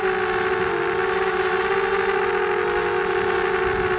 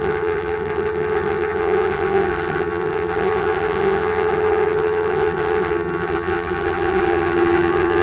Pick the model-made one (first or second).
second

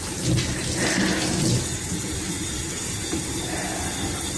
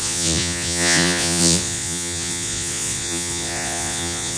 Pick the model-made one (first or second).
second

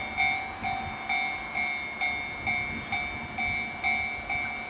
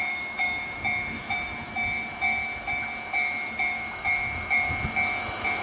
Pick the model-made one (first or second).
second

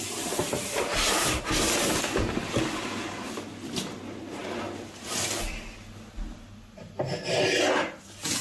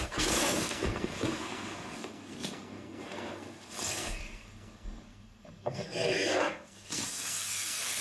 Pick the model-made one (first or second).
second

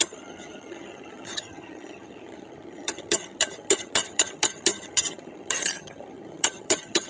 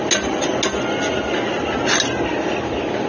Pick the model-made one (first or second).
first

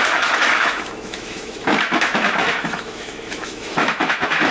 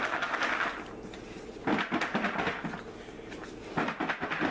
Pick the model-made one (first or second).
first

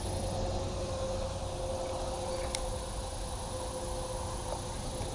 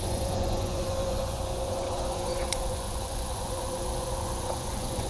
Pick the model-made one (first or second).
second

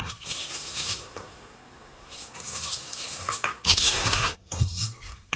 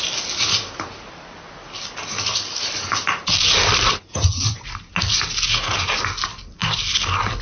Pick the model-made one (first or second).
first